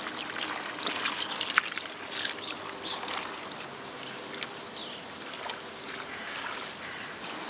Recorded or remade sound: recorded